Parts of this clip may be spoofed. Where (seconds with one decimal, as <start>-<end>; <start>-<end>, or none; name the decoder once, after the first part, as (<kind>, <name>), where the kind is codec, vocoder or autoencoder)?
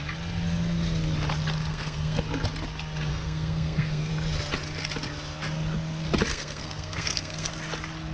1.7-2.2 (codec, SNAC); 3.1-4.1; 6.3-7.5